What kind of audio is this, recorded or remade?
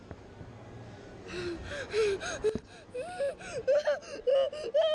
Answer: recorded